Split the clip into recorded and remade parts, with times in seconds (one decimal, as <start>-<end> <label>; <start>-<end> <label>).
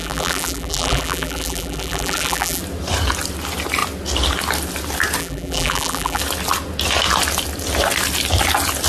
0.0-2.6 remade; 2.6-5.2 recorded; 5.2-6.2 remade; 6.2-8.9 recorded